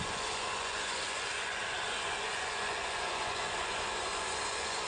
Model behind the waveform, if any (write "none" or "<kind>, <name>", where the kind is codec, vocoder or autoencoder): vocoder, Vocos